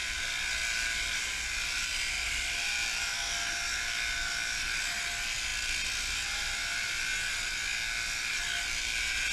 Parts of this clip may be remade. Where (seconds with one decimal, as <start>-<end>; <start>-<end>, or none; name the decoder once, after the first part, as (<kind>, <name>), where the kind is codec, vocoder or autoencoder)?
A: none